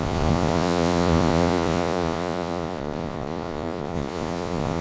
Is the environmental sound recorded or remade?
remade